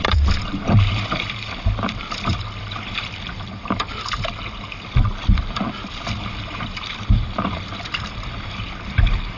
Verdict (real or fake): fake